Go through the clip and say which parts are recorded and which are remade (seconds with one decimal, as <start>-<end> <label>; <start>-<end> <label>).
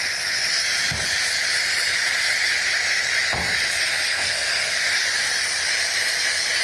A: 0.0-4.1 recorded; 4.1-4.9 remade; 4.9-6.6 recorded